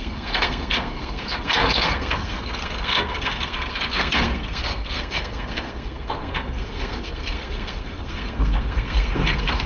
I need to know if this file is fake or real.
fake